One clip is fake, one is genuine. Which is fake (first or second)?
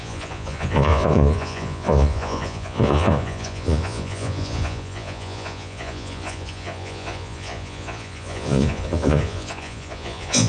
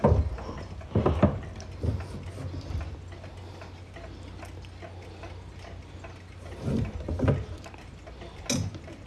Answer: first